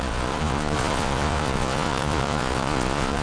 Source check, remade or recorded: remade